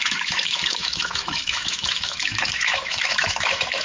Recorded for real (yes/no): no